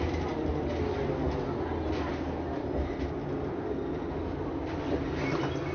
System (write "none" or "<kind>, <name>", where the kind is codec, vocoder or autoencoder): none